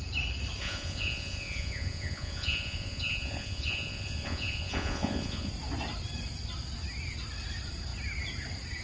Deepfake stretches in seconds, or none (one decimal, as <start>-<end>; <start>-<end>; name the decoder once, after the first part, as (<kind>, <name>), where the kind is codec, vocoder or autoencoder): 0.6-5.5 (vocoder, Vocos)